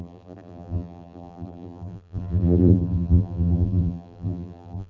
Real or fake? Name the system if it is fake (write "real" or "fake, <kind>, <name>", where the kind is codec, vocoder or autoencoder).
fake, vocoder, BigVGAN v2